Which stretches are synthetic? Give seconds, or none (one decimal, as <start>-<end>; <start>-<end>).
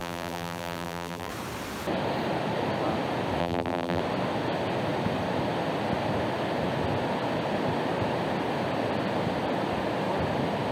0.0-1.3; 3.4-4.0